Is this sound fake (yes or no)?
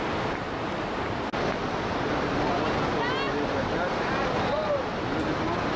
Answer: no